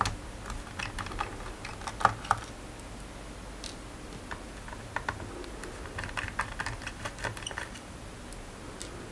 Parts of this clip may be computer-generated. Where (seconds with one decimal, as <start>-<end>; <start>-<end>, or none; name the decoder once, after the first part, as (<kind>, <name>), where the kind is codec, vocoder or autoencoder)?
none